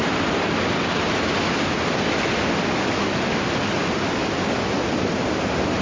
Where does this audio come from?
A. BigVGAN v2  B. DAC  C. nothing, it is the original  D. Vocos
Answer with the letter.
C